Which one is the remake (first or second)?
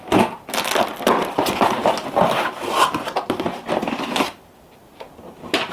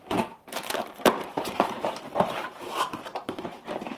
second